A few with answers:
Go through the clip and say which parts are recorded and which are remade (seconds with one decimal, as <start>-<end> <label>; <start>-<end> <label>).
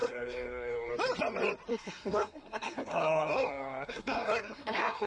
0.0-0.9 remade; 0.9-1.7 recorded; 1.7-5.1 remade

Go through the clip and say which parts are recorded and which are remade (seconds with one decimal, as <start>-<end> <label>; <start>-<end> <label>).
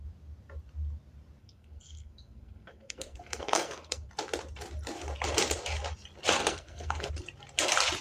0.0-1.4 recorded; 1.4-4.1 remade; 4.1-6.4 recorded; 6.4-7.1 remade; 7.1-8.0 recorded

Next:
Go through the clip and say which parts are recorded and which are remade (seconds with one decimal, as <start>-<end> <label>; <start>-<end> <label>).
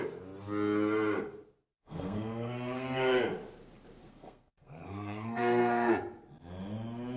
0.0-1.7 recorded; 1.7-3.2 remade; 3.2-4.0 recorded; 4.0-5.9 remade; 5.9-7.2 recorded